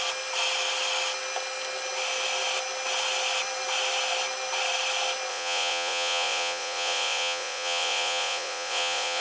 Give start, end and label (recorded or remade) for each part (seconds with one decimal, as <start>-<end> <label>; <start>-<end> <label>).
0.0-5.3 recorded; 5.3-9.2 remade